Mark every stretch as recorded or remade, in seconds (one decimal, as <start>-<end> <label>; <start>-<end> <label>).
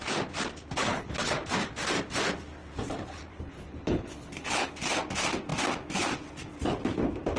0.0-0.8 recorded; 0.8-1.3 remade; 1.3-3.3 recorded; 3.3-4.7 remade; 4.7-7.4 recorded